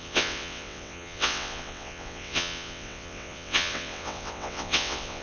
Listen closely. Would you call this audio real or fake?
fake